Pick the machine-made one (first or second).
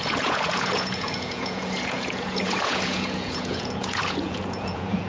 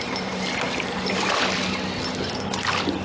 first